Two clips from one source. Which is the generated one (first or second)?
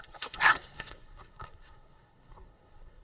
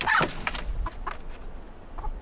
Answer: first